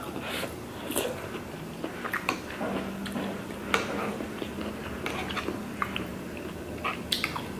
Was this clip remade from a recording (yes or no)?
no